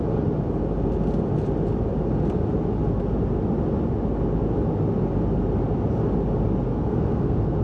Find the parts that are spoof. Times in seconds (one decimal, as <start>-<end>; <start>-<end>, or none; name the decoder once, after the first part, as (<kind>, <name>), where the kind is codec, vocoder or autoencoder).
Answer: 6.7-7.6 (codec, SNAC)